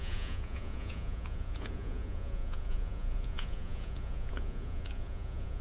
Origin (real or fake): fake